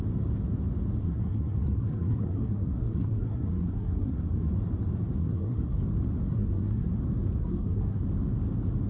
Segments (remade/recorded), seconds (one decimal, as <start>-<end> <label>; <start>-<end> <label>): 0.0-1.0 recorded; 1.0-4.5 remade; 4.5-5.2 recorded; 5.2-5.8 remade; 5.8-6.3 recorded; 6.3-7.0 remade; 7.0-7.4 recorded; 7.4-8.0 remade; 8.0-8.9 recorded

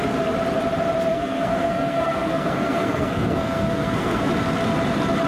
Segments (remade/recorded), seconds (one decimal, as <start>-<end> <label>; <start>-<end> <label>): 0.0-1.1 recorded; 1.1-4.3 remade; 4.3-5.3 recorded

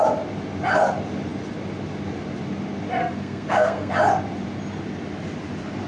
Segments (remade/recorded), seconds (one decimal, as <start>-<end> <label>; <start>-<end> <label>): 0.0-3.0 recorded; 3.0-3.9 remade; 3.9-5.9 recorded

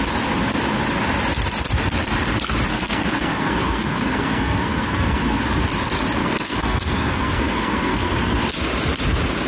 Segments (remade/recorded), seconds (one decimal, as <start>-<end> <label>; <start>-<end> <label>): 0.0-2.7 recorded; 2.7-5.4 remade; 5.4-6.2 recorded; 6.2-8.4 remade; 8.4-9.5 recorded

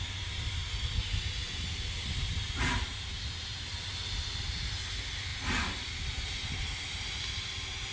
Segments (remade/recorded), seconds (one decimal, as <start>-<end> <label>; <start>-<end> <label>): 0.0-7.9 recorded